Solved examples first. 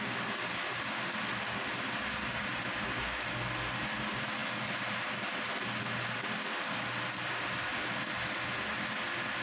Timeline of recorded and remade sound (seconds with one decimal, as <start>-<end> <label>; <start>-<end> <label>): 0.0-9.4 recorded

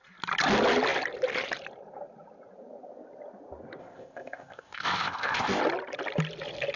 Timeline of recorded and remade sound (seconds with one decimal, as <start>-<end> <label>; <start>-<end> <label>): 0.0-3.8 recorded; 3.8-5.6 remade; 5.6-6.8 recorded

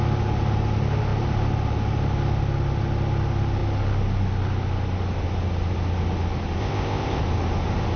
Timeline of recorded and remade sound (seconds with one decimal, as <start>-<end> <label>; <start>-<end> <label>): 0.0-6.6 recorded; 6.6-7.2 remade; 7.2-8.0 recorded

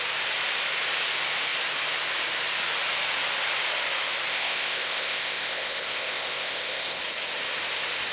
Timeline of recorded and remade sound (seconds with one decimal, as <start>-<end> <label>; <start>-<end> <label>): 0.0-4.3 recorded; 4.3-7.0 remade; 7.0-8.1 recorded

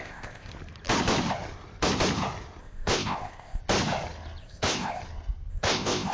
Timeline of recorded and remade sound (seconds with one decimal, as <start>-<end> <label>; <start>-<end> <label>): 0.0-0.5 remade; 0.5-2.6 recorded; 2.6-3.6 remade; 3.6-4.4 recorded; 4.4-5.0 remade; 5.0-5.5 recorded; 5.5-6.1 remade

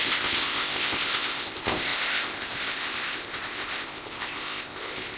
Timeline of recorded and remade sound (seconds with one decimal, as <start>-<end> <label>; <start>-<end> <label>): 0.0-5.2 remade

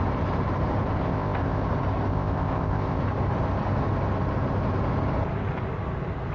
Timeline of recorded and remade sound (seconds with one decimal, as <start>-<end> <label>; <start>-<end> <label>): 0.0-1.0 recorded; 1.0-1.6 remade; 1.6-2.1 recorded; 2.1-3.0 remade; 3.0-6.3 recorded